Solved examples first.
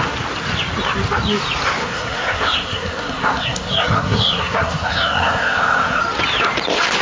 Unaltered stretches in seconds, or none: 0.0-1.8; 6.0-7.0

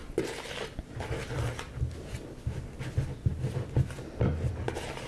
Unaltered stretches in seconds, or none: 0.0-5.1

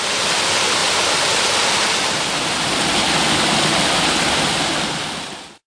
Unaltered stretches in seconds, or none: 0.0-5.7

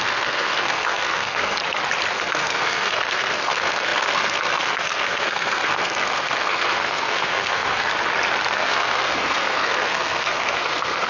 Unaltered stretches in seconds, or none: 1.6-2.1; 7.9-8.5

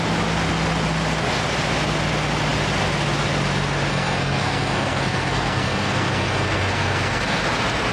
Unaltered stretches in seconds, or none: 0.0-3.9; 7.4-7.9

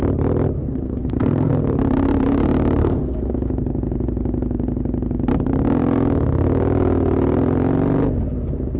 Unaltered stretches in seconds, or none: 0.0-0.6; 1.5-2.8; 3.3-8.8